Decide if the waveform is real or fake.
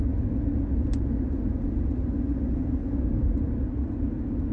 real